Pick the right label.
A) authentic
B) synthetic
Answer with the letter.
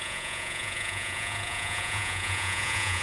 B